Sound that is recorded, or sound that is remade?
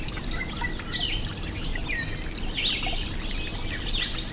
recorded